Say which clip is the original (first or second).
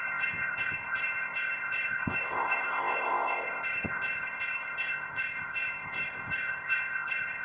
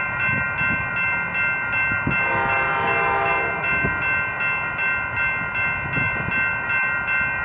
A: second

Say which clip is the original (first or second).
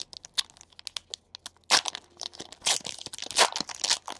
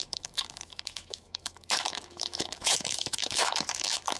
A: first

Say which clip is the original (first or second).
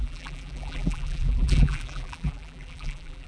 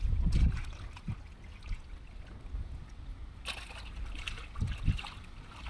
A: second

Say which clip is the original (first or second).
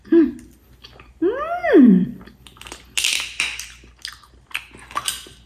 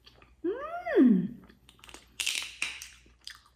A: first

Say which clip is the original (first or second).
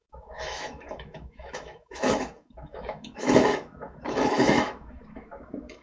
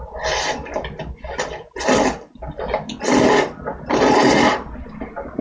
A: second